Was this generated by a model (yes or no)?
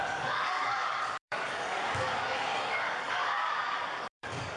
yes